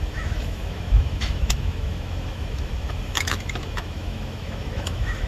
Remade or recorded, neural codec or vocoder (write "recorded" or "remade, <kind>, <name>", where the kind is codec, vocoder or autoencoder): remade, autoencoder, DAC-VAE